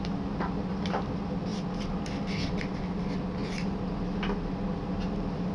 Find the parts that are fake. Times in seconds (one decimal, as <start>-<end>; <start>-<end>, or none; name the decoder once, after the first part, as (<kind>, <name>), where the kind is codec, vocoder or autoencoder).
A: 3.4-3.9 (vocoder, BigVGAN v2)